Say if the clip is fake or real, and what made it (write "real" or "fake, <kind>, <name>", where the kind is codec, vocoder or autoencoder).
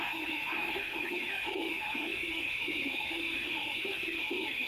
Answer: fake, autoencoder, DAC-VAE